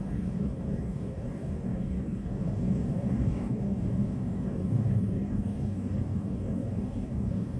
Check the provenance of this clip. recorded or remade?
remade